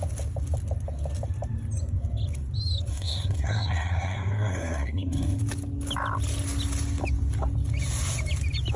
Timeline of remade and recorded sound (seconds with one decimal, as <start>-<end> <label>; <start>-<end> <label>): 0.0-2.9 recorded; 2.9-5.4 remade; 5.4-8.8 recorded